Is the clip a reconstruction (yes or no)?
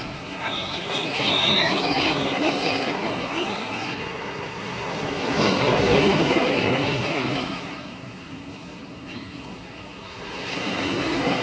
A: yes